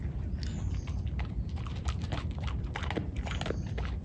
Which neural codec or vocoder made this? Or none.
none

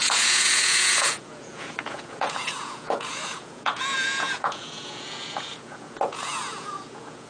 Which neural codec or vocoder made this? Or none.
vocoder, Vocos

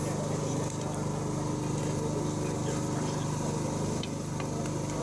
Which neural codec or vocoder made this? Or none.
none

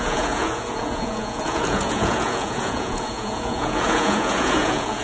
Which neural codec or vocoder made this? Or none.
vocoder, Vocos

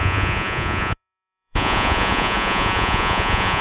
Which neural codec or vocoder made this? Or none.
vocoder, Vocos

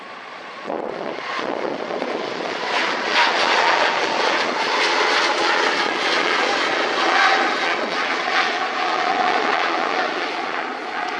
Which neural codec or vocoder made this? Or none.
vocoder, Vocos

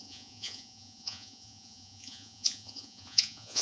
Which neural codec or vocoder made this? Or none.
vocoder, Vocos